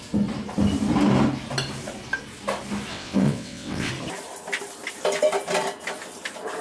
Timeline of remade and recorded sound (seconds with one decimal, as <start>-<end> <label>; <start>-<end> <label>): 0.0-2.9 recorded; 2.9-3.9 remade; 3.9-6.6 recorded